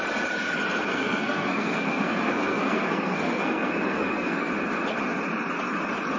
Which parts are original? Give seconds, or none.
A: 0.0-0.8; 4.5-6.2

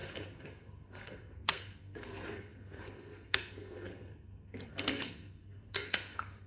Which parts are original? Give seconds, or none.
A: none

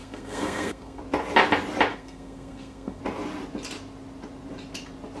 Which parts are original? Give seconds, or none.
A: 1.0-1.9; 3.0-5.2

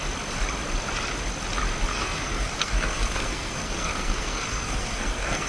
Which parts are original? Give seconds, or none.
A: 0.0-1.9

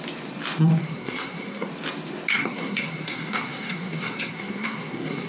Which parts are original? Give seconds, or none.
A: 0.0-0.8; 1.7-2.3

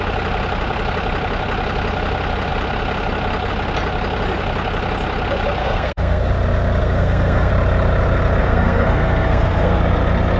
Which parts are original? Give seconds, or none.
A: 0.0-5.6; 6.3-6.8; 7.5-8.4; 9.8-10.4